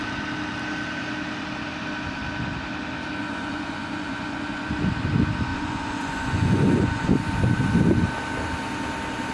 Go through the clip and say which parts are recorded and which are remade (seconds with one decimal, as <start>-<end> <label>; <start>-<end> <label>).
0.0-3.2 recorded; 3.2-4.8 remade; 4.8-5.5 recorded; 5.5-7.1 remade; 7.1-9.3 recorded